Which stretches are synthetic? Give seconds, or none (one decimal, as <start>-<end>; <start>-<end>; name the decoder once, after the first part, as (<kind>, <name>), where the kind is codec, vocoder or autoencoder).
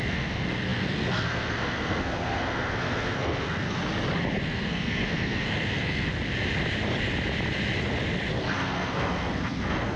0.0-3.8 (codec, SNAC); 4.4-6.1; 8.4-10.0